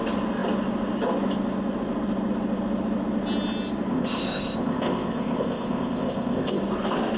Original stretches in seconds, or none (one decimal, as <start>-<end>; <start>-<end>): 0.0-3.9; 6.6-7.2